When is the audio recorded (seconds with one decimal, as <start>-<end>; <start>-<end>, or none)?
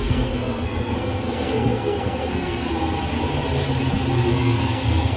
2.7-4.3